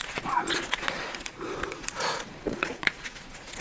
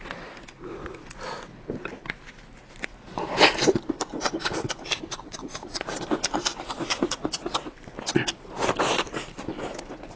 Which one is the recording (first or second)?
second